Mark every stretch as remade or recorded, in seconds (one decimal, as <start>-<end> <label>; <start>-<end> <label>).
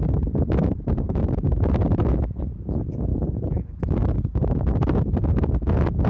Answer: 0.0-0.6 recorded; 0.6-2.0 remade; 2.0-3.1 recorded; 3.1-4.0 remade; 4.0-6.1 recorded